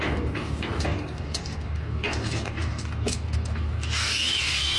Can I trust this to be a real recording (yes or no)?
no